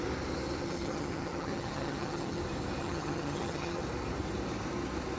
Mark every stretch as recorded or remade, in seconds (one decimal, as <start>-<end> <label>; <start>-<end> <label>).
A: 0.0-0.6 recorded; 0.6-2.4 remade; 2.4-2.8 recorded; 2.8-3.8 remade; 3.8-5.2 recorded